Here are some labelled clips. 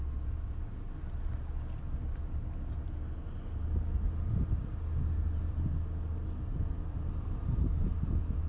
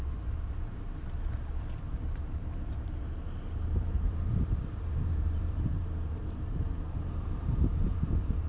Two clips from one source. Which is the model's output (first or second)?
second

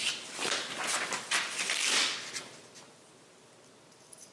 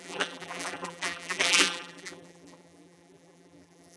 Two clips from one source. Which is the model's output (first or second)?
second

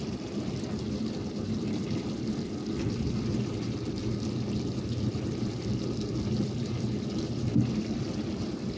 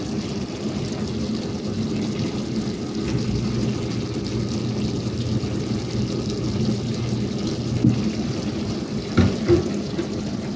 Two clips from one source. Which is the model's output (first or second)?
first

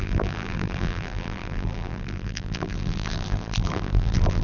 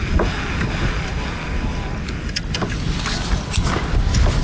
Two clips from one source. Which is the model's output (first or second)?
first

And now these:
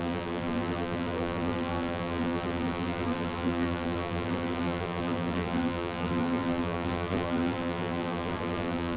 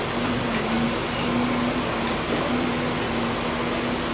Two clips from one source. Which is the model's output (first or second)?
first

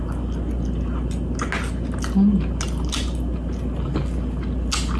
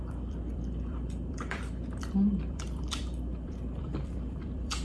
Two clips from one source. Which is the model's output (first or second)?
second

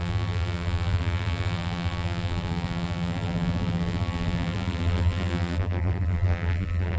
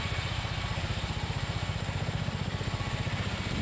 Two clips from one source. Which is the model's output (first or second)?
first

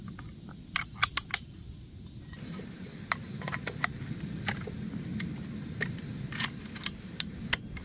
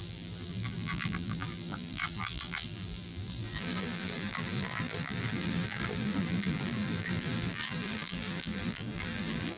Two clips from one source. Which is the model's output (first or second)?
second